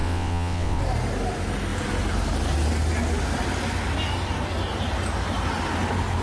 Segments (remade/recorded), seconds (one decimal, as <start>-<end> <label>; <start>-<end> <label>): 0.0-0.8 remade; 0.8-6.2 recorded